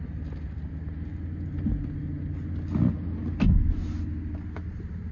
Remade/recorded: recorded